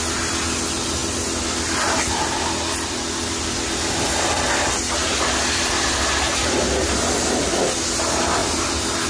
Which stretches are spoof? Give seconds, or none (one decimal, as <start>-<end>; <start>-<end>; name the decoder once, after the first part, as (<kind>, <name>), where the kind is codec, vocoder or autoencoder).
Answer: none